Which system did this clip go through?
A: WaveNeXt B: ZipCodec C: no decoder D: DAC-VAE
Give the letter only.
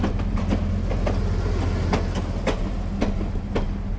C